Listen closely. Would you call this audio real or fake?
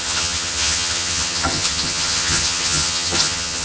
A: fake